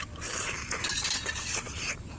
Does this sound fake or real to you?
real